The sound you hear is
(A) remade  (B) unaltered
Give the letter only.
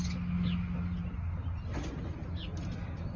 B